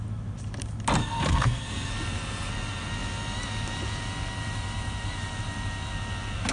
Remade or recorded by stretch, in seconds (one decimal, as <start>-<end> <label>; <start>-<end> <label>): 0.0-1.0 recorded; 1.0-1.9 remade; 1.9-6.5 recorded